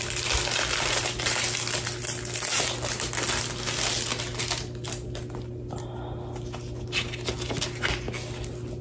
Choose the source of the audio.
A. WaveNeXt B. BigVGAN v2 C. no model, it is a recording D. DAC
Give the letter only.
C